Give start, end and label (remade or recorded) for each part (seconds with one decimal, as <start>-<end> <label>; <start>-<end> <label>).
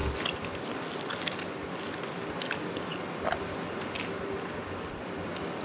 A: 0.0-5.6 recorded